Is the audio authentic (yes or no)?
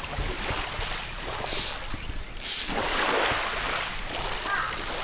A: yes